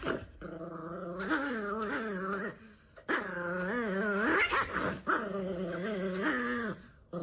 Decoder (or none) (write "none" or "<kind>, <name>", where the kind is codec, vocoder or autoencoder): none